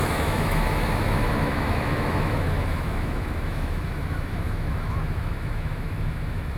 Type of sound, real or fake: fake